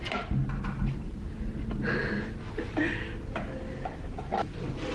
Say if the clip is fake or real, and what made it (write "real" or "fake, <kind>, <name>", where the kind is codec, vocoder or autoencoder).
real